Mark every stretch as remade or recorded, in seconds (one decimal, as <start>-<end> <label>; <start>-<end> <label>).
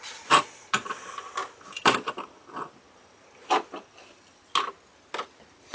0.0-5.7 recorded